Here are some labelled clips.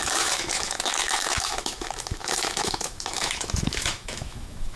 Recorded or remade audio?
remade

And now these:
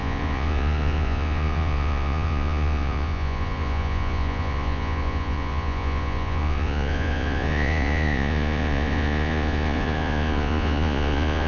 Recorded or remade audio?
remade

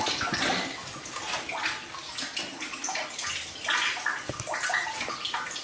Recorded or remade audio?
recorded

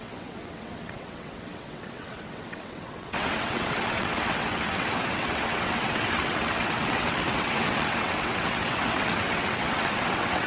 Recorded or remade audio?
remade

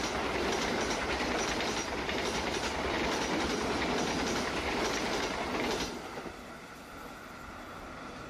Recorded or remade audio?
recorded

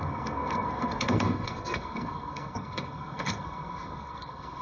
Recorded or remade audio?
remade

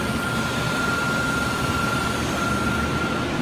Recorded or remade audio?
recorded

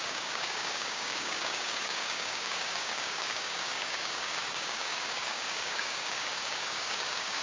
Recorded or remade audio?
remade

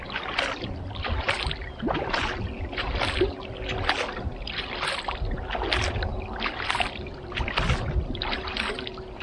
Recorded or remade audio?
recorded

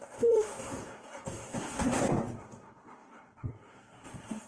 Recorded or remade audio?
remade